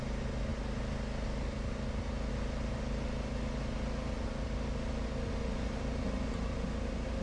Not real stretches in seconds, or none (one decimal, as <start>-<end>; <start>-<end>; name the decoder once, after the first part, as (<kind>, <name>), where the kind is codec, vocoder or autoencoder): none